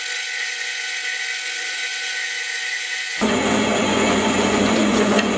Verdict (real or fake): fake